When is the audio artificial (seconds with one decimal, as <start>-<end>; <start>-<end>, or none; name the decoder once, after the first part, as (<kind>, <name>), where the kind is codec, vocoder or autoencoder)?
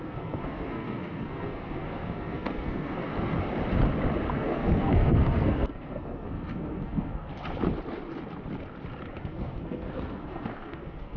0.0-3.0 (codec, SNAC); 4.3-7.3; 9.2-11.2